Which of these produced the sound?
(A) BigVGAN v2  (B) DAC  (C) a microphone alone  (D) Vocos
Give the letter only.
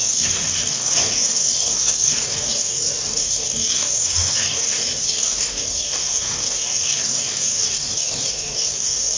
B